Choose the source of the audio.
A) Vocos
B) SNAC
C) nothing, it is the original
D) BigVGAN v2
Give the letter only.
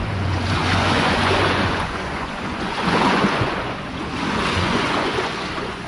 A